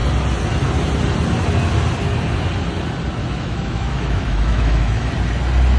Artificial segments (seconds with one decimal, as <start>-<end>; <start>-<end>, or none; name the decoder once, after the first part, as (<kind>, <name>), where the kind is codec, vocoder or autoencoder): 3.2-5.1 (autoencoder, DAC-VAE)